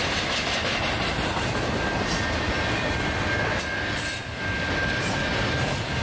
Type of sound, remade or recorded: recorded